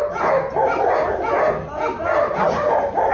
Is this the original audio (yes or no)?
yes